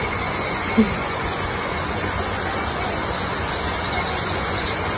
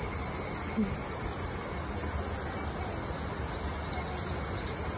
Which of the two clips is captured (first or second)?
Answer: second